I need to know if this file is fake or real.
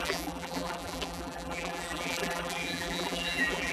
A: fake